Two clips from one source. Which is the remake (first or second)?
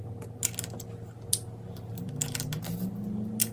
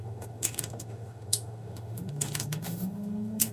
second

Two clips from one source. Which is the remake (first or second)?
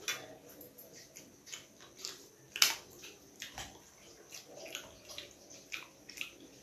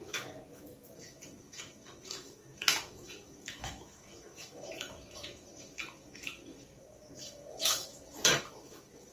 second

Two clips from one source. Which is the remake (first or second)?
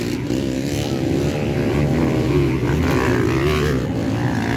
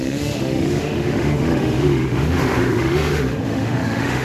second